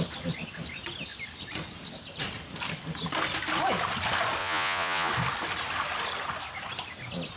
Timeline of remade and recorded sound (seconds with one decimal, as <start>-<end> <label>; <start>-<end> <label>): 0.0-4.4 recorded; 4.4-5.1 remade; 5.1-7.4 recorded